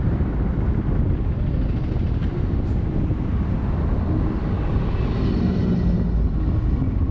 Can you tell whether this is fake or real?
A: real